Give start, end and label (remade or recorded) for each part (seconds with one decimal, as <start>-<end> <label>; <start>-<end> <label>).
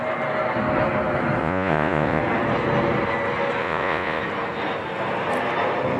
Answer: 0.0-1.4 recorded; 1.4-2.2 remade; 2.2-3.6 recorded; 3.6-4.2 remade; 4.2-6.0 recorded